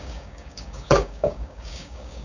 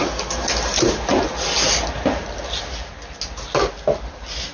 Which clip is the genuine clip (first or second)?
second